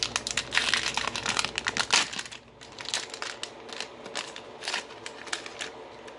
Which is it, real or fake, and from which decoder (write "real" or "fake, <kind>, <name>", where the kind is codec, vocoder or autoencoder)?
real